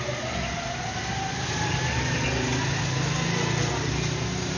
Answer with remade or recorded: recorded